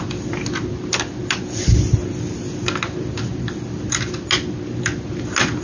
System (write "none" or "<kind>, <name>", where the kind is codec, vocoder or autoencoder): none